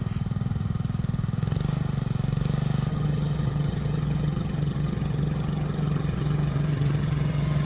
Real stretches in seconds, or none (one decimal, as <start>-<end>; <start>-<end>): 0.0-2.9